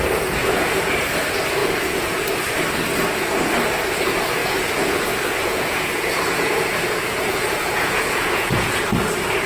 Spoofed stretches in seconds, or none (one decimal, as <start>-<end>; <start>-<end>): 0.4-1.1; 1.6-2.2; 4.4-8.8